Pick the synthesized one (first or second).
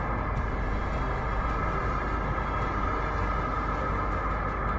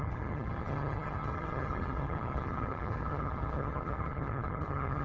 second